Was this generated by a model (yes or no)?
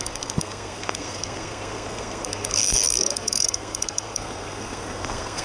yes